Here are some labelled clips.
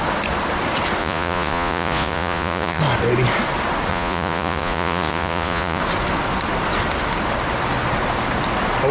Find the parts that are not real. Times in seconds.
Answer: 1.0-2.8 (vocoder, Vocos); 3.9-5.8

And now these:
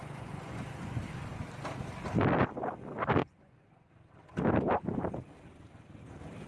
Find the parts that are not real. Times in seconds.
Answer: 0.0-1.0 (vocoder, Vocos); 3.2-3.9